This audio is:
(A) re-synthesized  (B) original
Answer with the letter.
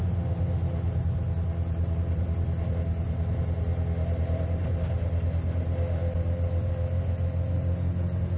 B